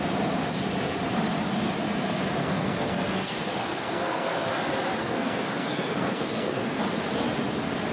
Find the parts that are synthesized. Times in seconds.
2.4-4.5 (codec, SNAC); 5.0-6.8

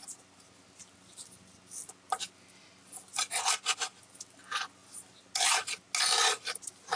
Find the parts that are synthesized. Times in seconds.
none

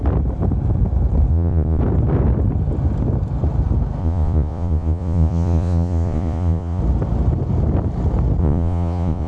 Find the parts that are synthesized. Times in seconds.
1.3-1.8 (vocoder, Vocos); 4.0-6.8; 8.4-9.3